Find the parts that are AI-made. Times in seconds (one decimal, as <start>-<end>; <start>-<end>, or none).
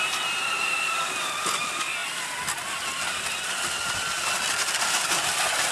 none